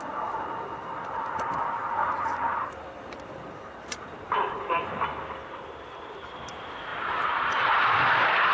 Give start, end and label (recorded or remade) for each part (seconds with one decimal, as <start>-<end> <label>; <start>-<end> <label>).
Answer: 0.0-8.5 remade